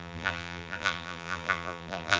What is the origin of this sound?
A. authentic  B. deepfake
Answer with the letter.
B